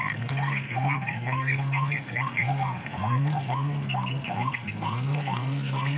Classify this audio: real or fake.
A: fake